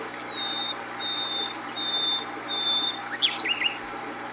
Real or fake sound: real